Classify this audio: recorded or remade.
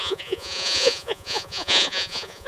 remade